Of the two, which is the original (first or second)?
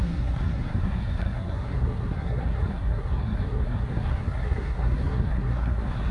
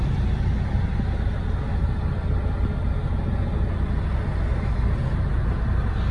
second